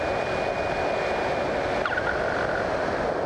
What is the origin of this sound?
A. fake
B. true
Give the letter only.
B